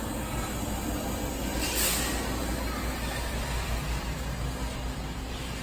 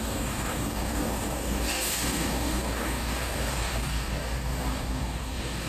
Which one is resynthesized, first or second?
second